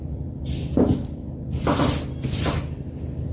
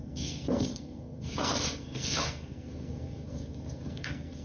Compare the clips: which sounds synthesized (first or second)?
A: second